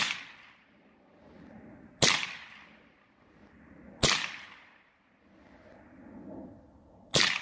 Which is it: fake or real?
real